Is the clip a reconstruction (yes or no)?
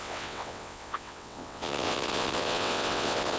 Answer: yes